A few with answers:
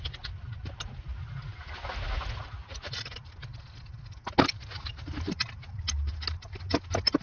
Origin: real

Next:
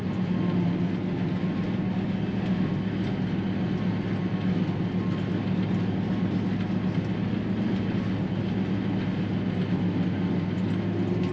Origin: real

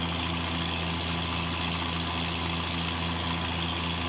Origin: real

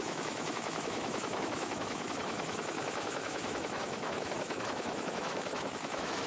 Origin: fake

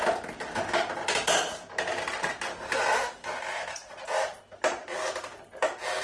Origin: real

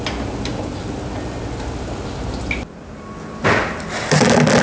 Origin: real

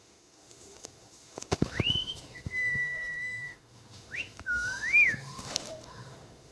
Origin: fake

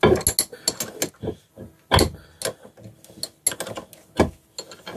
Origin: real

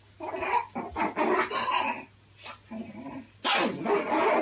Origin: real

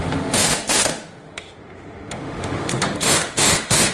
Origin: fake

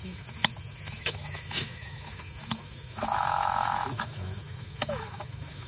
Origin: fake